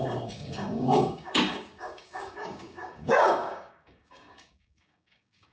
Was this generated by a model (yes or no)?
yes